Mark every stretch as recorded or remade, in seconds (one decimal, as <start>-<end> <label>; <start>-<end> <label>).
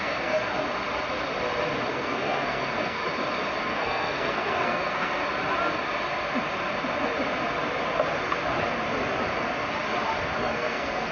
0.0-0.5 remade; 0.5-1.9 recorded; 1.9-3.0 remade; 3.0-3.6 recorded; 3.6-5.2 remade; 5.2-10.4 recorded; 10.4-11.1 remade